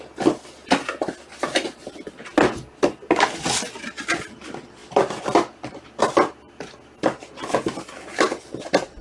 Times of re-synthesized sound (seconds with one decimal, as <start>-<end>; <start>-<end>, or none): 4.8-6.0